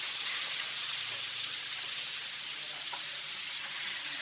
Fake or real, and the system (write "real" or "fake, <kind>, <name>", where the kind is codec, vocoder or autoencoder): real